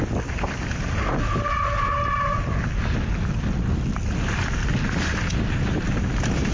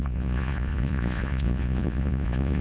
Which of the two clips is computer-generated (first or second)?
second